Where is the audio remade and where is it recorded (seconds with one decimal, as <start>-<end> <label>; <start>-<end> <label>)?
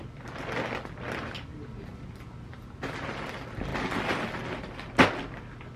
0.0-5.8 recorded